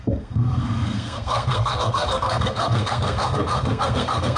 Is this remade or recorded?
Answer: remade